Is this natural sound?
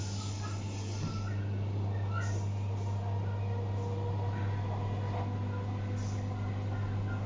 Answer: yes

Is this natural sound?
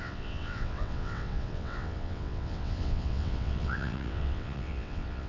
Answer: no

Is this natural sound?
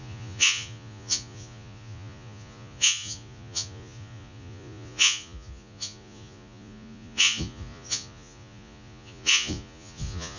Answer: no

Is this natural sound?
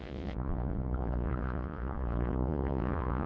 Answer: no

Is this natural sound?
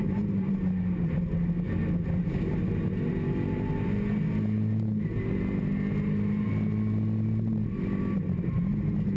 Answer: yes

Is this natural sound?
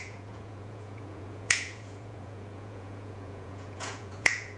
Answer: no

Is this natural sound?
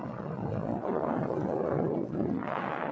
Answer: no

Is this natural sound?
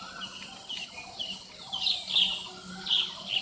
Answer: yes